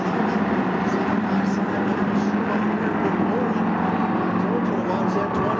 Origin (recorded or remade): recorded